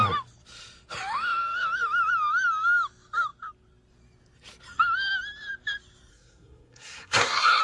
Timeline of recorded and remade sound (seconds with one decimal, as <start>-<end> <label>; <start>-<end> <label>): 0.0-6.1 recorded; 6.1-7.6 remade